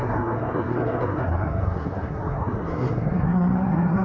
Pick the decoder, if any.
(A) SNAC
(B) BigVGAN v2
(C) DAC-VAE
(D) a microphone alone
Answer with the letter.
A